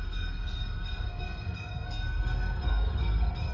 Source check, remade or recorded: remade